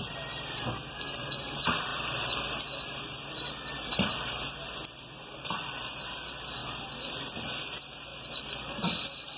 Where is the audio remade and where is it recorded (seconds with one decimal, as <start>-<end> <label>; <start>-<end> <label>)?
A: 0.0-1.9 recorded; 1.9-3.5 remade; 3.5-3.9 recorded; 3.9-5.9 remade; 5.9-6.6 recorded; 6.6-7.2 remade; 7.2-8.1 recorded; 8.1-9.4 remade